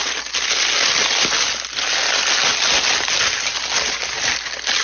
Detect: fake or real real